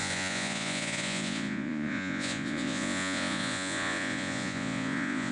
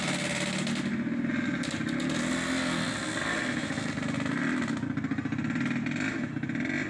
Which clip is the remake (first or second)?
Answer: first